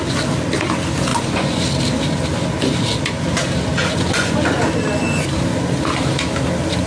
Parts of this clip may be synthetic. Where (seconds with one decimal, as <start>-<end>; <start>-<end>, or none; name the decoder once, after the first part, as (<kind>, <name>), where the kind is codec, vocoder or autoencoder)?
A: 1.1-1.6 (vocoder, Vocos); 3.8-4.6